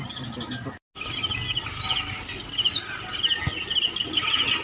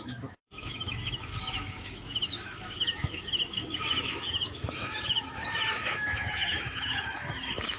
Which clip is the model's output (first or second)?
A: second